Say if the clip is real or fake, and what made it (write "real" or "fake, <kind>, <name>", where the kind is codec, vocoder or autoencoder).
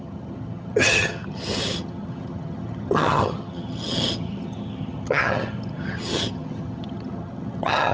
fake, vocoder, HiFi-GAN